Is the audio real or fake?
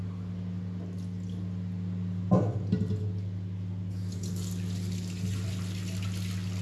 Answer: real